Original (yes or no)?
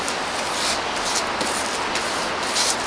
yes